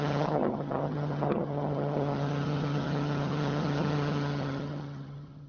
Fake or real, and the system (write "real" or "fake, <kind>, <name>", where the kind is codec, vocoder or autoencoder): fake, vocoder, HiFi-GAN